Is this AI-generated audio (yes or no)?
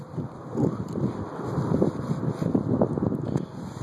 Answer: no